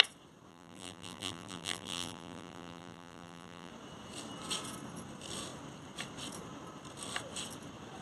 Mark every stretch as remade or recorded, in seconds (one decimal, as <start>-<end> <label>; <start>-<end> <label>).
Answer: 0.0-0.5 recorded; 0.5-3.7 remade; 3.7-8.0 recorded